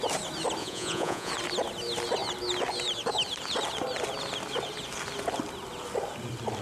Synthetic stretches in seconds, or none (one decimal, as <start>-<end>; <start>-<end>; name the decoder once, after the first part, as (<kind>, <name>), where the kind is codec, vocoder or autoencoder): 0.6-1.3 (vocoder, Vocos)